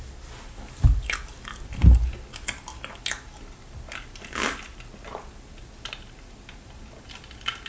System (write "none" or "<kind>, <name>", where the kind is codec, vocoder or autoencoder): none